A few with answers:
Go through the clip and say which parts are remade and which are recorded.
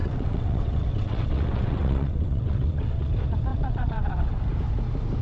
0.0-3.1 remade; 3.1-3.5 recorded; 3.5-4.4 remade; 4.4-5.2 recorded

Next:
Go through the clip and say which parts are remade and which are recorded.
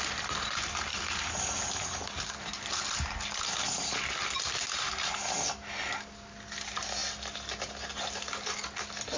0.0-9.2 recorded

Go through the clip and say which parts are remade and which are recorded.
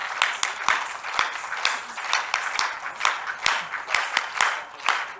0.0-5.2 recorded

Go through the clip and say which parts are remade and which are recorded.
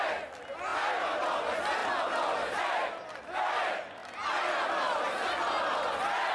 0.0-6.3 recorded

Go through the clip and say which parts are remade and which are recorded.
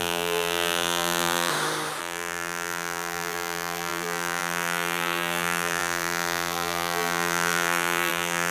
0.0-1.5 remade; 1.5-2.0 recorded; 2.0-8.5 remade